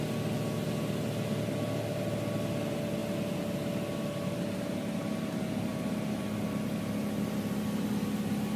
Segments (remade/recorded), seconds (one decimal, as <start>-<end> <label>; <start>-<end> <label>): 0.0-8.6 recorded